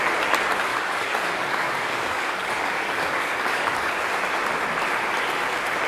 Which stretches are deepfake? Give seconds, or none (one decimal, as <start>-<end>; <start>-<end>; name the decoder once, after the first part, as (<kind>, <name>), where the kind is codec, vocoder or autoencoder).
0.7-4.2 (codec, DAC)